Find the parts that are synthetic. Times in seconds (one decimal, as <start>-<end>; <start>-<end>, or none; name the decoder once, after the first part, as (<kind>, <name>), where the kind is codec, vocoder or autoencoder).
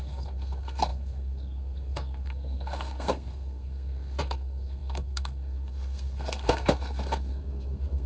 0.0-8.1 (codec, SNAC)